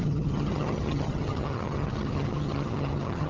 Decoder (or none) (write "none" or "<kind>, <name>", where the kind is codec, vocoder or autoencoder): vocoder, HiFi-GAN